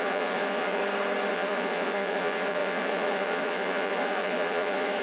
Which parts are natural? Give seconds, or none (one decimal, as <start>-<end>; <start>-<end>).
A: 0.8-1.3